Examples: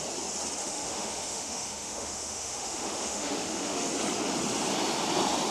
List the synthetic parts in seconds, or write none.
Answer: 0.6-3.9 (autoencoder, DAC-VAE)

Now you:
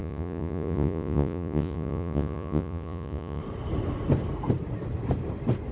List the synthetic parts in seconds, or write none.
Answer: 0.0-3.4 (vocoder, Vocos)

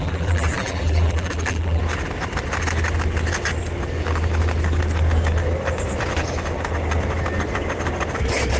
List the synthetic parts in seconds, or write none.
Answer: 0.0-1.8 (vocoder, BigVGAN v2)